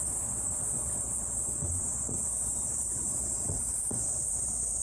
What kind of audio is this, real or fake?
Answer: fake